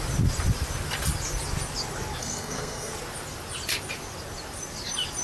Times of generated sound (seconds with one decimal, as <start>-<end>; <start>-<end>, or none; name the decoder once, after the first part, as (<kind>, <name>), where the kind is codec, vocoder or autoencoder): 2.2-2.9 (codec, SNAC)